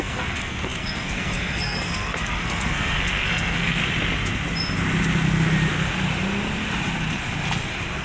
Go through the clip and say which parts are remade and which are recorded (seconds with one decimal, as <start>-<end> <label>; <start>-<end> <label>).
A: 0.0-3.8 remade; 3.8-8.0 recorded